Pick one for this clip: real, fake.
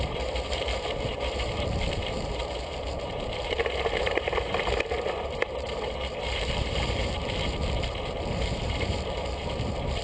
fake